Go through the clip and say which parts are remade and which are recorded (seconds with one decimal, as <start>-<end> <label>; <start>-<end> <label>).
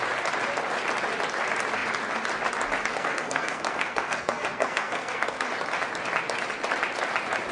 0.0-2.9 recorded; 2.9-5.5 remade; 5.5-7.5 recorded